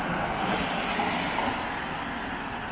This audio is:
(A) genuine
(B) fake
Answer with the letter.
A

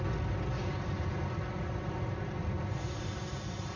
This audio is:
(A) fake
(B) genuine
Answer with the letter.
B